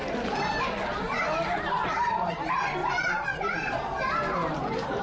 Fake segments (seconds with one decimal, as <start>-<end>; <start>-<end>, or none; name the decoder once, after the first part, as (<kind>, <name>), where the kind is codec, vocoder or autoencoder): 0.0-2.3 (vocoder, BigVGAN v2); 2.8-4.0; 4.4-5.0